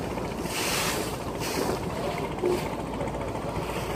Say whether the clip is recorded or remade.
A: recorded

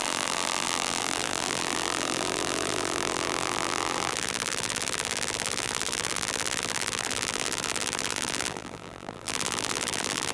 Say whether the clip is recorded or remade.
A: remade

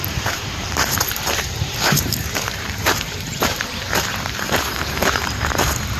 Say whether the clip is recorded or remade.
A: remade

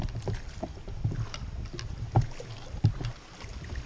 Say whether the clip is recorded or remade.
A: recorded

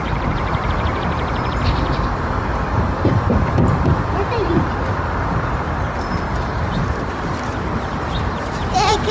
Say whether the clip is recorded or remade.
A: remade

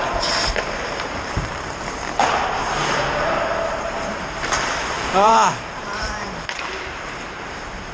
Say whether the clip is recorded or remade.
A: remade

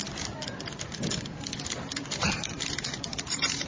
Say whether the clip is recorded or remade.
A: remade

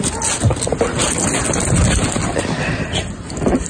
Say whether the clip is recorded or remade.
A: recorded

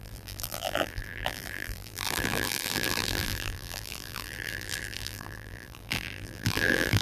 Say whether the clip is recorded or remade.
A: remade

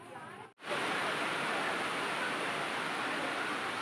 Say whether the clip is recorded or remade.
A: recorded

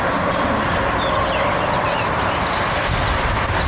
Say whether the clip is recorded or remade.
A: recorded